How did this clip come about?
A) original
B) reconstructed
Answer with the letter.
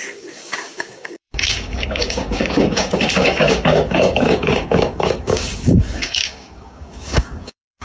B